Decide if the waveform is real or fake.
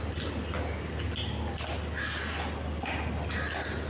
real